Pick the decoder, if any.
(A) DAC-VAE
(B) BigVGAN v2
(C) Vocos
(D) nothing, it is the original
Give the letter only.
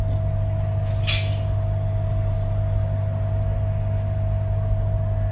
D